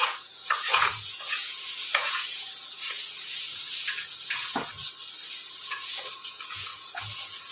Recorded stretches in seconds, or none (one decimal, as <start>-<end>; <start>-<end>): 4.8-5.5